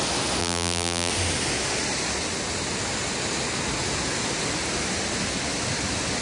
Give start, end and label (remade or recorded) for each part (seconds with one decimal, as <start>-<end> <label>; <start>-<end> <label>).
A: 0.0-0.4 recorded; 0.4-1.1 remade; 1.1-6.2 recorded